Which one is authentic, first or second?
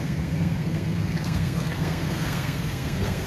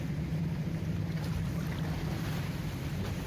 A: second